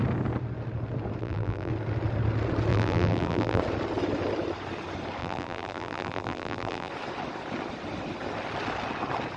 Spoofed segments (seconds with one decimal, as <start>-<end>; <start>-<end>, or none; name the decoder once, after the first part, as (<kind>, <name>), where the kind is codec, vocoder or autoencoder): 1.2-1.7 (vocoder, BigVGAN v2); 2.7-3.6; 5.2-6.9